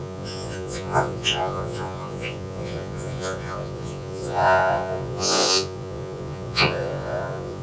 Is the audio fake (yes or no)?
yes